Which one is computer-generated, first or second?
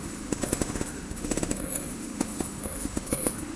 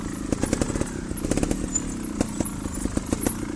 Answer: first